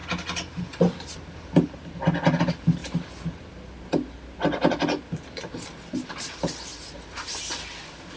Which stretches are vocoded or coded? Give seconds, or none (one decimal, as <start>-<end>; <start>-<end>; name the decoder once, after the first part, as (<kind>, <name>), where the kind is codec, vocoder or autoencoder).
none